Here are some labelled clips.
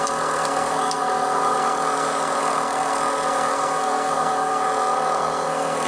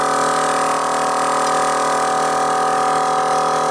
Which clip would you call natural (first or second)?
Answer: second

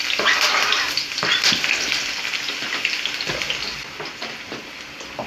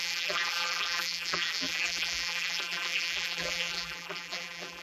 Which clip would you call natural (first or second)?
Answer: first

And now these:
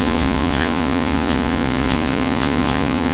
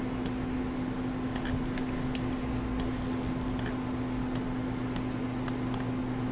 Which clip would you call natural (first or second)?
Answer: second